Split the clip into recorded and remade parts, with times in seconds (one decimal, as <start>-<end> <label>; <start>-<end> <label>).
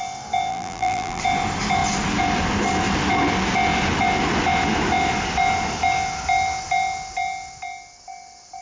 0.0-0.5 recorded; 0.5-1.2 remade; 1.2-8.6 recorded